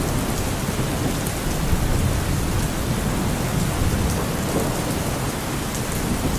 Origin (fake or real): real